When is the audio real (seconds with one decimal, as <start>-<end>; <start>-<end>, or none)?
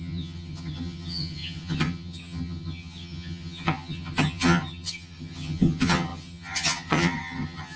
none